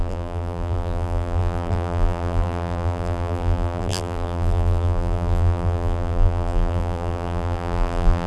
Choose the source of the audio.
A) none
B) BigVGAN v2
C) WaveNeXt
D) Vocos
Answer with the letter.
B